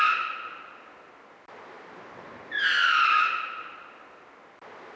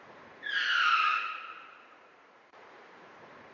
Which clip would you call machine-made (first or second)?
second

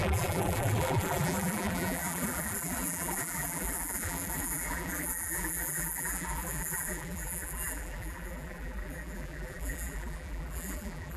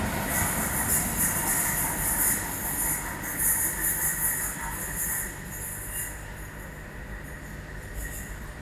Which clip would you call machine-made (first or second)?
first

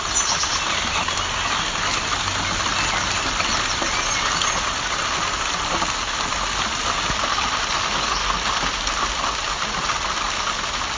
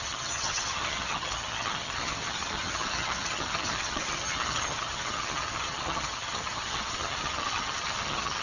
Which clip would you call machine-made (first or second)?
second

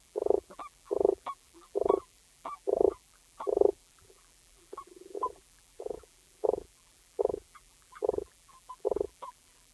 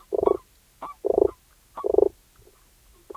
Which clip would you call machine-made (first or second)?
first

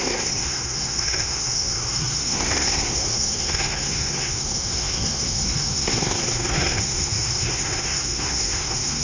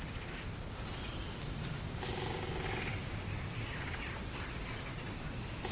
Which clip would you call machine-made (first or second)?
first